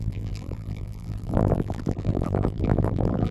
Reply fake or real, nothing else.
fake